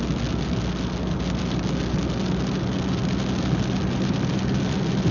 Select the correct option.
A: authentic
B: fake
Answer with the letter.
A